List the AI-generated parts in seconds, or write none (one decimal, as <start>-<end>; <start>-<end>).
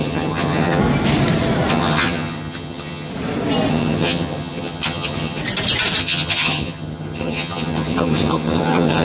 0.0-0.8; 1.7-3.1; 3.7-5.4; 6.0-9.0